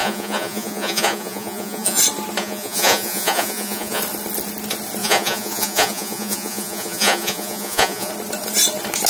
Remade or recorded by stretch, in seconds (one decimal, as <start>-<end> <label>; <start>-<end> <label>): 0.0-2.0 remade; 2.0-2.4 recorded; 2.4-4.0 remade; 4.0-5.0 recorded; 5.0-8.1 remade; 8.1-9.1 recorded